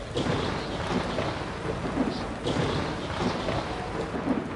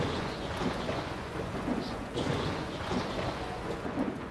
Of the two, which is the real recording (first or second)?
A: first